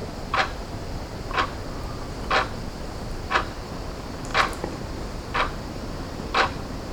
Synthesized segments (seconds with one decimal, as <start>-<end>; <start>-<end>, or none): none